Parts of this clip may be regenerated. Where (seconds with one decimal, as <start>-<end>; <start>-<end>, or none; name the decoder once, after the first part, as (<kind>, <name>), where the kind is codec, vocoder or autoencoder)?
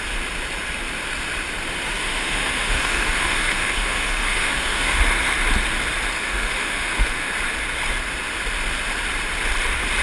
2.0-5.0 (autoencoder, DAC-VAE); 6.2-7.3